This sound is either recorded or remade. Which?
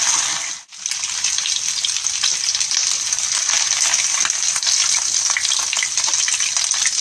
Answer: recorded